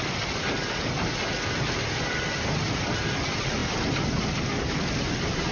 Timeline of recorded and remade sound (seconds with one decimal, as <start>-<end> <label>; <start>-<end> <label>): 0.0-5.5 recorded

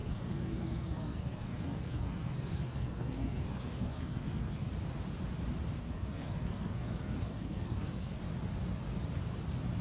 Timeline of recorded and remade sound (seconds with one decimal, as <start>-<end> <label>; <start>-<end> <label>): 0.0-4.7 remade; 4.7-5.8 recorded; 5.8-8.2 remade; 8.2-9.8 recorded